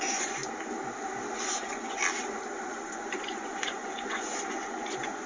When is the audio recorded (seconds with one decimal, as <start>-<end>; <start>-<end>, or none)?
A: 0.4-1.4; 2.0-2.7